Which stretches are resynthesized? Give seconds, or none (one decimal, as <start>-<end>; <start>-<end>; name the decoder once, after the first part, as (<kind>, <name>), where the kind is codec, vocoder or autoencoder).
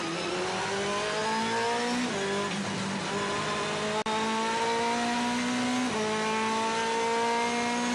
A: none